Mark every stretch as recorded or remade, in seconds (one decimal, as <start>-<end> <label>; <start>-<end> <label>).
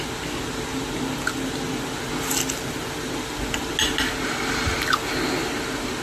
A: 0.0-6.0 recorded